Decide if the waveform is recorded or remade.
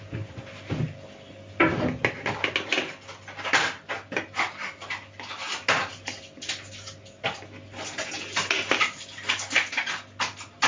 recorded